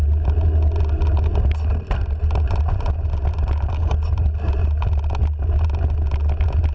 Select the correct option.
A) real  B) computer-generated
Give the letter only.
A